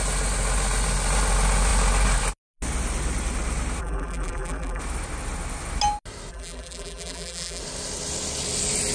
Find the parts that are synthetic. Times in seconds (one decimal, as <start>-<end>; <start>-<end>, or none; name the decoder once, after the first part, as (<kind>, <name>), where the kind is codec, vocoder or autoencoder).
3.8-4.8 (vocoder, BigVGAN v2); 6.3-7.6